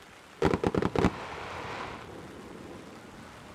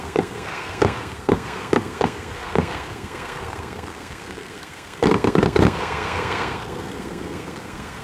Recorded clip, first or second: first